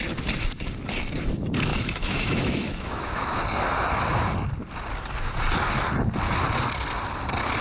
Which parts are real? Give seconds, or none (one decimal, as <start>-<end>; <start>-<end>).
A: 0.0-1.7; 3.4-7.6